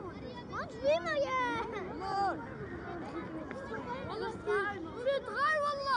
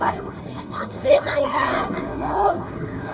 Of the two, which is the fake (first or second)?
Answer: second